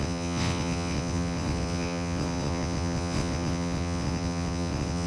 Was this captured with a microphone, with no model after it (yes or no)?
no